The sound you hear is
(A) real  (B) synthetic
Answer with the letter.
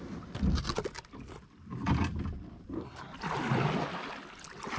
A